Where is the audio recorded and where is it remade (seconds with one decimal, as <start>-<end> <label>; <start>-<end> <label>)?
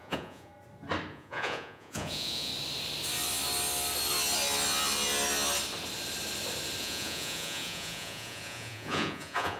0.0-0.5 remade; 0.5-1.1 recorded; 1.1-2.5 remade; 2.5-6.8 recorded; 6.8-9.6 remade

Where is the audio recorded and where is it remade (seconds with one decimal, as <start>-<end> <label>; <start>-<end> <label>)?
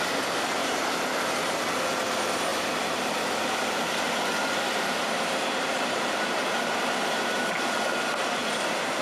0.0-0.6 recorded; 0.6-1.3 remade; 1.3-2.5 recorded; 2.5-7.5 remade; 7.5-8.4 recorded; 8.4-9.0 remade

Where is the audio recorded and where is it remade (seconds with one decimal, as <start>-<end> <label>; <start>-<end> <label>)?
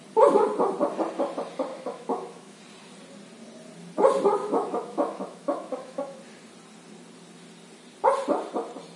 0.0-1.7 recorded; 1.7-2.6 remade; 2.6-4.4 recorded; 4.4-6.2 remade; 6.2-9.0 recorded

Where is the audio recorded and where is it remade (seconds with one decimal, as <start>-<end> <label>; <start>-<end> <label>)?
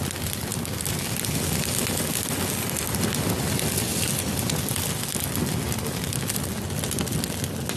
0.0-7.8 recorded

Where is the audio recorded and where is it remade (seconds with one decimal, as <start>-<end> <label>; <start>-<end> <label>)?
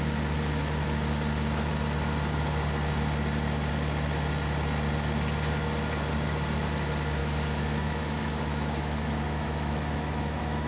0.0-7.2 recorded; 7.2-10.7 remade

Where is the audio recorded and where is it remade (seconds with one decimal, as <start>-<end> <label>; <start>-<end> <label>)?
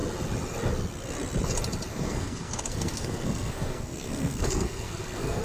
0.0-1.9 recorded; 1.9-5.4 remade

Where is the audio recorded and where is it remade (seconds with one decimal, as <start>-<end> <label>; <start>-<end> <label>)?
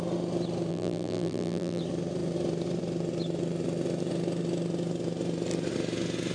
0.0-0.7 recorded; 0.7-1.8 remade; 1.8-6.3 recorded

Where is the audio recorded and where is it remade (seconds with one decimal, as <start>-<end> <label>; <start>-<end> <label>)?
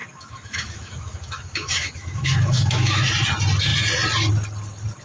0.0-3.0 remade; 3.0-5.0 recorded